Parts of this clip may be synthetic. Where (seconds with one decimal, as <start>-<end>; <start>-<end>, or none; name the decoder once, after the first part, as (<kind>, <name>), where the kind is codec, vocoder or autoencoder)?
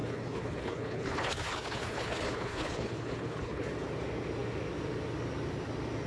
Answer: 0.0-3.7 (codec, HILCodec)